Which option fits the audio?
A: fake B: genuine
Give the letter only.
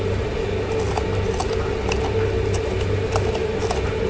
B